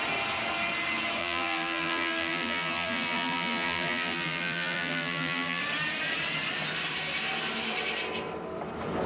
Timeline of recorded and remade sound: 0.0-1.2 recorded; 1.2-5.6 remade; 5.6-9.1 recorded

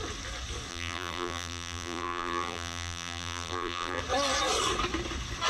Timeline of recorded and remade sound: 0.0-0.7 recorded; 0.7-4.0 remade; 4.0-5.5 recorded

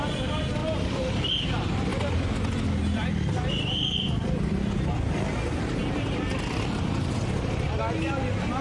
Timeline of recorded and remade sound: 0.0-1.9 recorded; 1.9-4.5 remade; 4.5-8.6 recorded

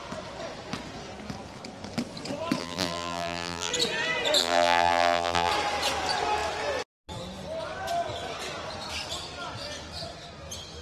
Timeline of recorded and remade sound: 0.0-2.6 recorded; 2.6-3.7 remade; 3.7-4.4 recorded; 4.4-5.5 remade; 5.5-10.8 recorded

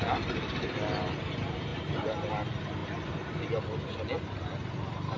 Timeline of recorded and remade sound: 0.0-1.7 recorded; 1.7-2.3 remade; 2.3-5.2 recorded